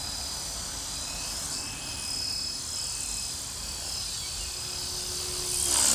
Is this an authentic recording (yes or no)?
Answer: yes